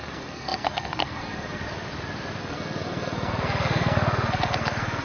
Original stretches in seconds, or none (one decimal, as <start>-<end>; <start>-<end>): 1.6-2.4